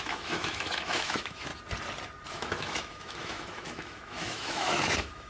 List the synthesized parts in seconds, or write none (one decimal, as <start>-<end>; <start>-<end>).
0.0-1.5; 2.3-5.3